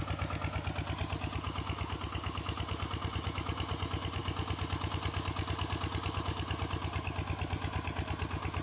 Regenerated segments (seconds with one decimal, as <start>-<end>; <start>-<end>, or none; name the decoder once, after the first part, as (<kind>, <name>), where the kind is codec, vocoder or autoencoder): none